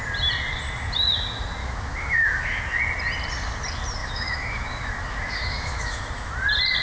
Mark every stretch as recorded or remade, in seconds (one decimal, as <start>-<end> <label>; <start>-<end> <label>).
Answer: 0.0-1.6 recorded; 1.6-2.6 remade; 2.6-4.0 recorded; 4.0-6.3 remade; 6.3-6.8 recorded